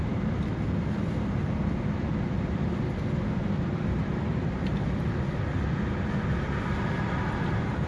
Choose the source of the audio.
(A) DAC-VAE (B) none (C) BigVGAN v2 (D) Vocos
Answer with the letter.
B